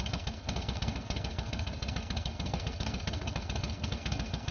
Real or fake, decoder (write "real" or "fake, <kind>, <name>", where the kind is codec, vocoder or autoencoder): fake, codec, SNAC